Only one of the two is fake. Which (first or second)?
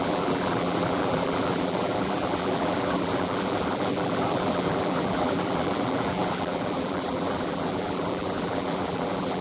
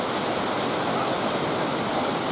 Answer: first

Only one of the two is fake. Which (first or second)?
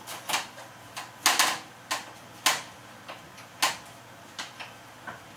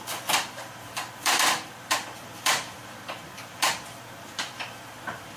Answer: second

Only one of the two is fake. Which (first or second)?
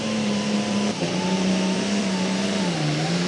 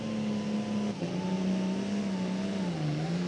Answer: first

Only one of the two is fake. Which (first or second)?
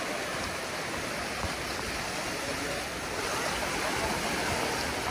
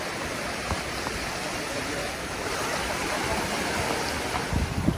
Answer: second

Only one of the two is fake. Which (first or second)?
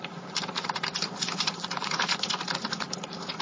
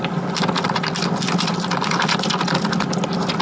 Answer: first